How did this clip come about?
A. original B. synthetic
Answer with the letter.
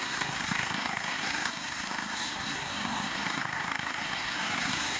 B